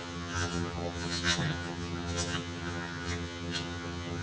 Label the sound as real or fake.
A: fake